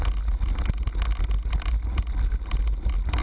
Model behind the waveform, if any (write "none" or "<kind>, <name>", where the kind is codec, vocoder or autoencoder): none